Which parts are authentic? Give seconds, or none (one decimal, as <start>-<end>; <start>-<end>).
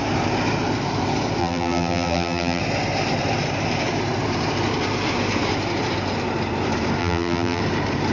0.0-1.4; 2.6-7.0; 7.6-8.1